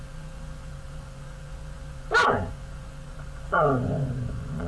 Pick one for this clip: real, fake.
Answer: fake